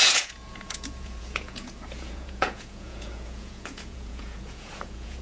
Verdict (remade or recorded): remade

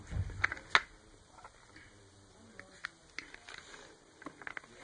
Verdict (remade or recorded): recorded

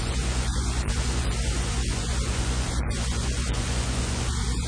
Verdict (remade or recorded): remade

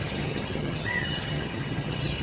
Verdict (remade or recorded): remade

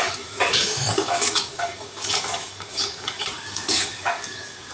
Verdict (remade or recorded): remade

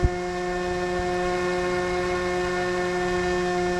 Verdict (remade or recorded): recorded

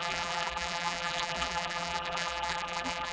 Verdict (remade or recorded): remade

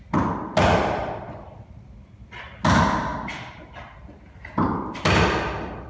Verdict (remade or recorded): recorded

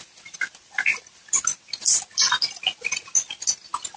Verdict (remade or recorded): recorded